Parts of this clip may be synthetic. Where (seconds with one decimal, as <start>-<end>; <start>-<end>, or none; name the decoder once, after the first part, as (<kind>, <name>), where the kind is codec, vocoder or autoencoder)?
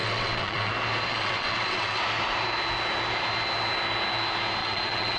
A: 0.0-0.7 (vocoder, WaveNeXt); 1.1-2.0; 4.6-5.2